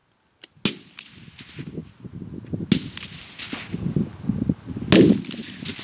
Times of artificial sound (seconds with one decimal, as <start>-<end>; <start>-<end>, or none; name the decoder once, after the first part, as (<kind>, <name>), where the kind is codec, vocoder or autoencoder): none